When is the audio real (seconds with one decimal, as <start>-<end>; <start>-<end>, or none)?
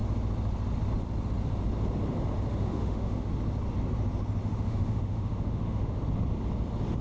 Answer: 0.0-2.5; 3.2-4.4; 6.0-7.0